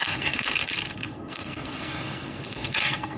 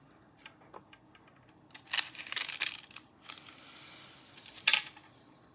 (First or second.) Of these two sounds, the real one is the second